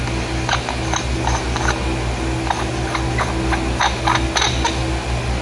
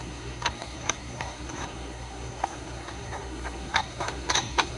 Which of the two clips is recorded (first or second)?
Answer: first